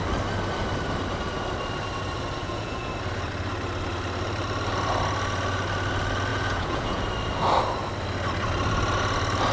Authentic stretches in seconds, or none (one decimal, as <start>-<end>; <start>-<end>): 0.0-2.4; 2.9-6.3; 7.0-9.5